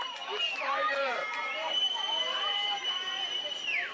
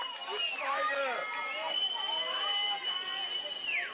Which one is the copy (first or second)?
first